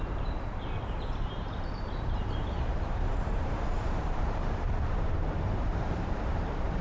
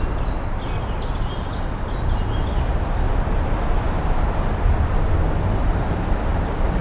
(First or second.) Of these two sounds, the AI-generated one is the first